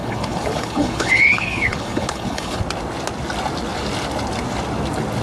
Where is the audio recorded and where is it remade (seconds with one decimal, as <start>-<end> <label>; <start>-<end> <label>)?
0.0-2.6 remade; 2.6-5.2 recorded